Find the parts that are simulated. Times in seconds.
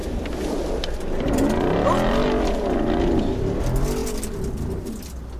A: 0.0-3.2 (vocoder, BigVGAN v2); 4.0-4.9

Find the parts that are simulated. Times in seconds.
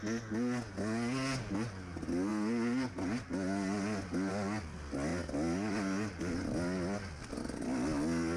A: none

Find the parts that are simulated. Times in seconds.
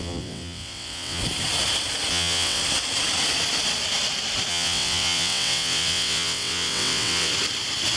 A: 0.0-1.2 (vocoder, WaveNeXt); 2.1-2.6; 4.5-7.3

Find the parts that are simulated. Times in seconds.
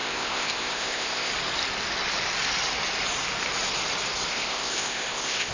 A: 0.0-1.3 (codec, ZipCodec); 4.3-5.5